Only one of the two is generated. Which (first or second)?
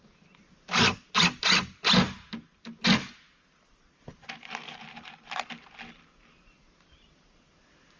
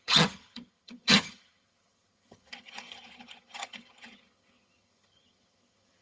second